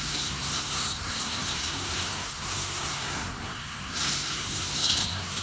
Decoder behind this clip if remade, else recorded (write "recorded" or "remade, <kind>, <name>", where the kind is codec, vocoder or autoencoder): remade, codec, SNAC